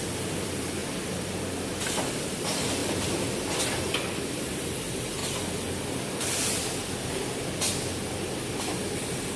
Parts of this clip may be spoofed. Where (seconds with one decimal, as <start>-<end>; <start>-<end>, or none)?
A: 0.0-0.8; 2.0-5.2; 8.5-9.4